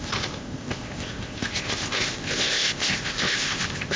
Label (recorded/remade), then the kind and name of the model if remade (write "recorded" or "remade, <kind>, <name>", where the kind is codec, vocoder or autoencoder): remade, codec, ZipCodec